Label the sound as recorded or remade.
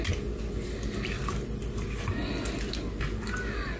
recorded